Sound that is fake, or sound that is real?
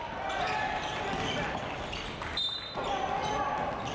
real